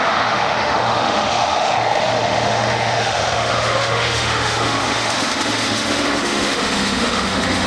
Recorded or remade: remade